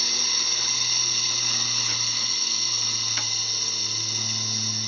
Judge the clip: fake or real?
real